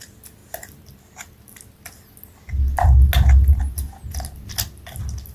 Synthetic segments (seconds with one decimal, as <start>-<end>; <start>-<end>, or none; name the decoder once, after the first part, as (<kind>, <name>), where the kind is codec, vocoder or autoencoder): none